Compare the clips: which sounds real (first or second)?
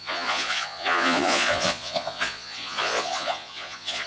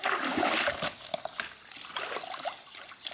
second